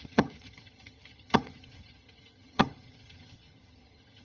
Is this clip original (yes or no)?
no